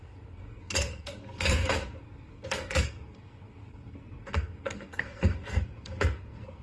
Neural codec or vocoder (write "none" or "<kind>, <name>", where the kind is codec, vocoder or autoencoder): codec, SNAC